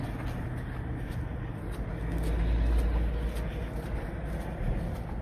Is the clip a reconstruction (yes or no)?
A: no